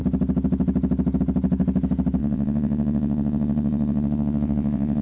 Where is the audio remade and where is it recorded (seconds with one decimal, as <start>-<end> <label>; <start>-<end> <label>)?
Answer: 0.0-2.2 recorded; 2.2-5.0 remade

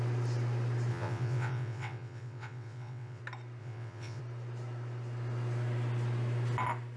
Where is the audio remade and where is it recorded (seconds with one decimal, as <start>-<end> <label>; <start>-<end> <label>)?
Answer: 0.0-0.9 recorded; 0.9-3.2 remade; 3.2-3.6 recorded; 3.6-4.2 remade; 4.2-7.0 recorded

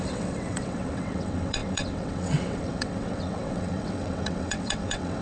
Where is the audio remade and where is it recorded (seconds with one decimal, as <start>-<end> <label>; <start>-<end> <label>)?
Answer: 0.0-5.2 remade

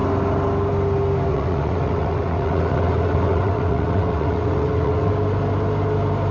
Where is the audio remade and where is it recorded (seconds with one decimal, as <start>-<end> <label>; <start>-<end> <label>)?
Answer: 0.0-1.3 recorded; 1.3-5.1 remade; 5.1-6.3 recorded

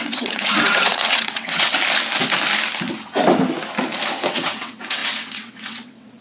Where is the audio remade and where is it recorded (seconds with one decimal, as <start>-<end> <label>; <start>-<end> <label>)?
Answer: 0.0-1.7 remade; 1.7-4.3 recorded; 4.3-6.2 remade

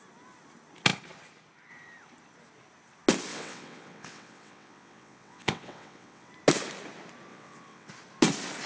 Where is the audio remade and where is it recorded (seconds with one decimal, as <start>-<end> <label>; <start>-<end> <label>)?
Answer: 0.0-3.3 recorded; 3.3-6.3 remade; 6.3-7.3 recorded; 7.3-7.9 remade; 7.9-8.7 recorded